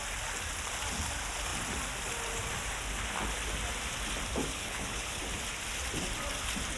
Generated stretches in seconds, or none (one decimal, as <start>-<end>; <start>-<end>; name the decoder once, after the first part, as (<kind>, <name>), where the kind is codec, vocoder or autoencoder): 4.5-5.2 (codec, HILCodec)